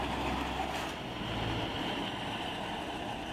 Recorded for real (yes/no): yes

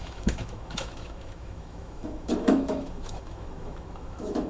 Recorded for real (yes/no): no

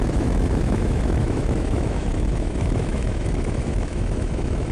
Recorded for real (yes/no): no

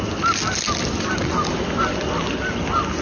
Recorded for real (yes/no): yes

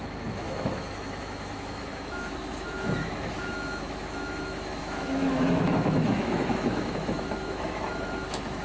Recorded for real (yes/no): no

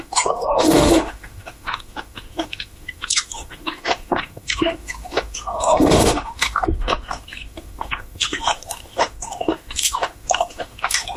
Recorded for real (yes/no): no